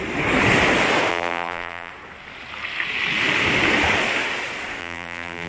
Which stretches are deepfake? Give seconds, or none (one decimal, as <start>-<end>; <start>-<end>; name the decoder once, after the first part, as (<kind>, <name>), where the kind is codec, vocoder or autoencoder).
1.1-1.9 (vocoder, BigVGAN v2); 4.8-5.5